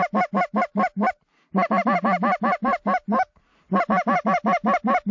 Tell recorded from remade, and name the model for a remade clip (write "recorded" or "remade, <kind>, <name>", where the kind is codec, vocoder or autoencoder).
recorded